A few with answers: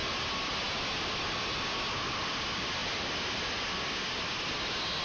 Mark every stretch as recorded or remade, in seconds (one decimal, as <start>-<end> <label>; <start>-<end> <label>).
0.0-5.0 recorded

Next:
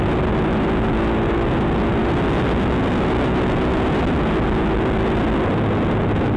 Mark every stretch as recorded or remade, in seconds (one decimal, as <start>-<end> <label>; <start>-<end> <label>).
0.0-6.4 recorded

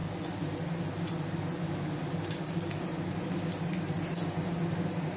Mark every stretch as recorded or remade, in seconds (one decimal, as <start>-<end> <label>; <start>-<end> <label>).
0.0-5.2 recorded

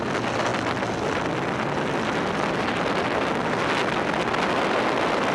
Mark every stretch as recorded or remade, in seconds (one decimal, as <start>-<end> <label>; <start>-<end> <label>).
0.0-5.3 recorded